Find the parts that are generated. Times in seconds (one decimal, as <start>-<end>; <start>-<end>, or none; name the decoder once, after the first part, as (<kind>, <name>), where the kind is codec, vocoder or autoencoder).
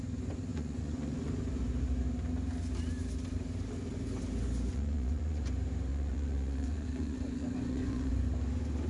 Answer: 0.5-1.3 (vocoder, Vocos); 4.7-5.4; 5.9-8.1